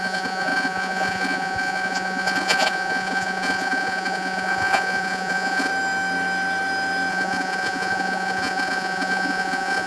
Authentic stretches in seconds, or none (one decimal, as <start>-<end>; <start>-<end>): 5.7-7.1